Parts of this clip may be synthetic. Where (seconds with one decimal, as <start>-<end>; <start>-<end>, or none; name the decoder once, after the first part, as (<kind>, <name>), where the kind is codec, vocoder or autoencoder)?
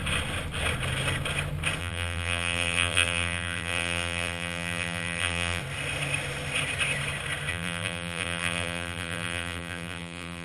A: 1.8-5.6 (vocoder, BigVGAN v2); 7.5-10.4